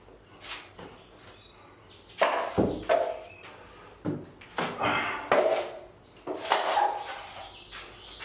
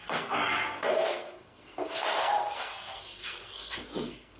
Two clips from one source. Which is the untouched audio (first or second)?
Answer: first